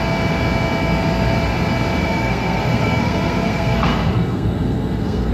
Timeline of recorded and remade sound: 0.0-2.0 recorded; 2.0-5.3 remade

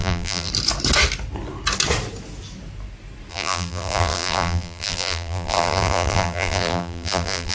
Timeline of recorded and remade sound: 0.0-0.5 remade; 0.5-3.3 recorded; 3.3-7.5 remade

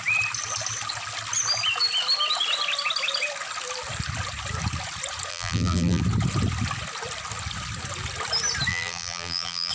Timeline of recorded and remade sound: 0.0-5.3 recorded; 5.3-6.0 remade; 6.0-8.7 recorded; 8.7-9.7 remade